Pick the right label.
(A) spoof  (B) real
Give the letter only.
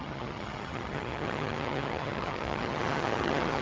A